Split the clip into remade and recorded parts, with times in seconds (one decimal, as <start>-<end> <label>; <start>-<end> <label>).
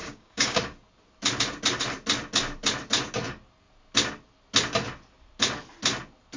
0.0-0.6 remade; 0.6-6.4 recorded